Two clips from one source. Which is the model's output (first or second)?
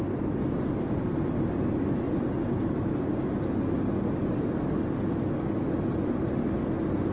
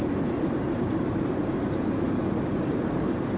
second